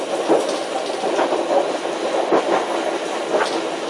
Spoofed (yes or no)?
no